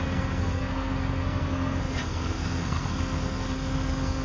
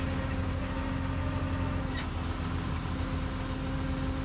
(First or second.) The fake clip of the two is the first